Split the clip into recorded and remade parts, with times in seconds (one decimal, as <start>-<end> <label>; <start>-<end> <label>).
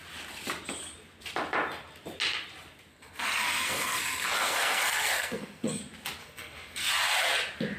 0.0-2.9 recorded; 2.9-5.8 remade; 5.8-6.2 recorded; 6.2-6.9 remade; 6.9-7.8 recorded